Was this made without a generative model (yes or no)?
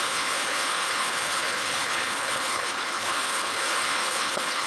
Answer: no